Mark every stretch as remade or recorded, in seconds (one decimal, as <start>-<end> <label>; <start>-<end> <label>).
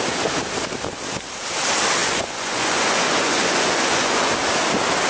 0.0-2.0 recorded; 2.0-4.3 remade; 4.3-5.1 recorded